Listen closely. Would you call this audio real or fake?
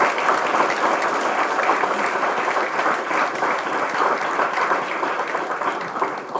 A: real